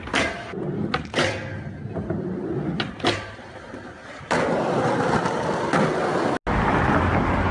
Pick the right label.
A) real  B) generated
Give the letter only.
A